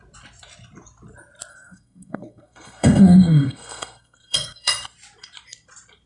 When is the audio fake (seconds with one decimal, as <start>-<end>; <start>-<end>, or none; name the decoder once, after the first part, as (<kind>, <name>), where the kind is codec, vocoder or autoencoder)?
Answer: 1.5-4.7 (codec, SNAC)